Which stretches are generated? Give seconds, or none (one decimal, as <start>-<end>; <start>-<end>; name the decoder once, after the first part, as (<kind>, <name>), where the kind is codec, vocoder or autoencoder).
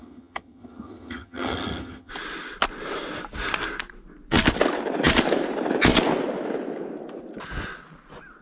0.0-2.1 (vocoder, HiFi-GAN)